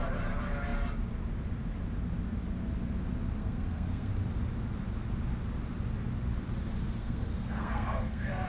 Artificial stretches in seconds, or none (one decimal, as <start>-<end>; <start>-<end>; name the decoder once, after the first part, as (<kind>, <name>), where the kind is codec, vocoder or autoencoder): 3.4-4.1 (codec, SNAC); 7.0-8.5